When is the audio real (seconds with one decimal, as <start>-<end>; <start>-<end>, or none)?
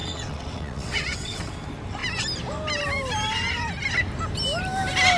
1.5-5.2